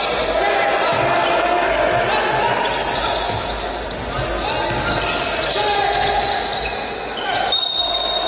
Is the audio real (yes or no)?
yes